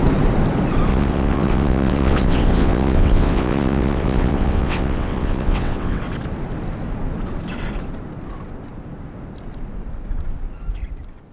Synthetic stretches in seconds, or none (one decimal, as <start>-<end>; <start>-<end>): 0.9-6.0